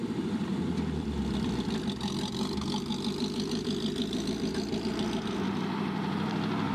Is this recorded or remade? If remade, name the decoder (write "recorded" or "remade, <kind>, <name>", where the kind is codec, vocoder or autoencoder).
remade, vocoder, BigVGAN v2